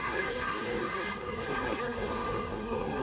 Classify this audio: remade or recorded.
remade